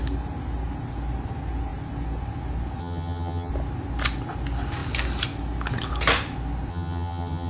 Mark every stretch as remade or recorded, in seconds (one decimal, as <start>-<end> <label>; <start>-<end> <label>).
0.0-2.8 recorded; 2.8-3.5 remade; 3.5-6.7 recorded; 6.7-7.5 remade